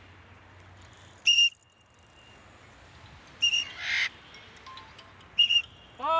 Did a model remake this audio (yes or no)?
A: no